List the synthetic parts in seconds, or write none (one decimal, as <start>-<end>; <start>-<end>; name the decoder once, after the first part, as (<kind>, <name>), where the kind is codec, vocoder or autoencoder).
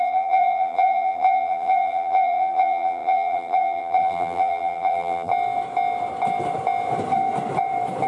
0.0-5.3 (vocoder, BigVGAN v2)